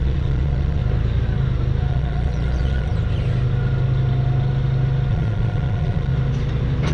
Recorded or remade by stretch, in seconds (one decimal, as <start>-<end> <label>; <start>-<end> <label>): 0.0-0.8 remade; 0.8-1.9 recorded; 1.9-2.9 remade; 2.9-5.1 recorded; 5.1-6.1 remade; 6.1-6.9 recorded